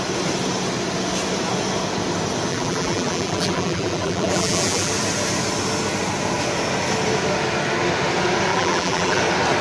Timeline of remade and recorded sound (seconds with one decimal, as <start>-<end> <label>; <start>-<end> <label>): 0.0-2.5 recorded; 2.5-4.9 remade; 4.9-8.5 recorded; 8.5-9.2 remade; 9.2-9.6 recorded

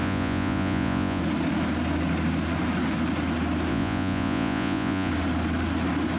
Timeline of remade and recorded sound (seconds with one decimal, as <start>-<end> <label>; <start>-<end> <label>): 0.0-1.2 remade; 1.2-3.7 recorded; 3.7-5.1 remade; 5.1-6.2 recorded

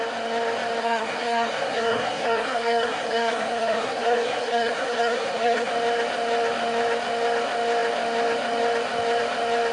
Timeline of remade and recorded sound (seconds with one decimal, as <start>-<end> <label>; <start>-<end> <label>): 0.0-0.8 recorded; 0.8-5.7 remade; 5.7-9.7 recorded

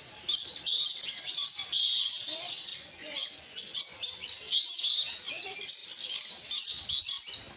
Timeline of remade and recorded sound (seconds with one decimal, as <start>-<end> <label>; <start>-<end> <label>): 0.0-2.7 recorded; 2.7-3.8 remade; 3.8-7.6 recorded

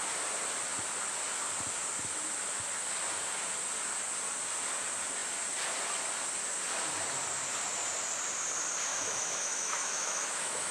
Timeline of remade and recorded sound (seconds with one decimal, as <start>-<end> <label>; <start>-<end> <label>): 0.0-8.9 recorded; 8.9-10.7 remade

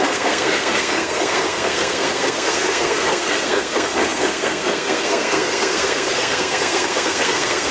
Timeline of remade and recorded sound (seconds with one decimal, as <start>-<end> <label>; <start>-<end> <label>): 0.0-7.7 remade

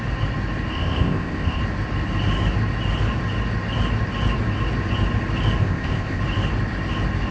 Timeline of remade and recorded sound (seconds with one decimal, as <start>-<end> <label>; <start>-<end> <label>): 0.0-0.7 recorded; 0.7-1.6 remade; 1.6-5.6 recorded; 5.6-6.2 remade; 6.2-7.3 recorded

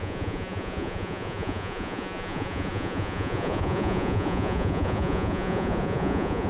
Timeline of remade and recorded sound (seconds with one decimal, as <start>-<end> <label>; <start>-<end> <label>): 0.0-6.5 remade